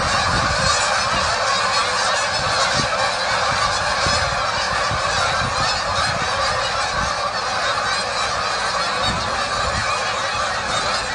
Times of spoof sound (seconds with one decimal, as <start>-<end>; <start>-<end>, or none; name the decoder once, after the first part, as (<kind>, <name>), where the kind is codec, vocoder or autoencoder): none